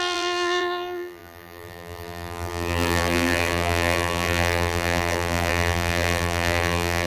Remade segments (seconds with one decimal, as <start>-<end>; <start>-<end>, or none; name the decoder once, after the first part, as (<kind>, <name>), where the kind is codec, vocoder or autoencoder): 0.0-7.1 (vocoder, BigVGAN v2)